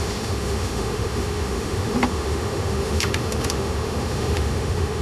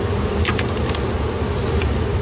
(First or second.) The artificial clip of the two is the first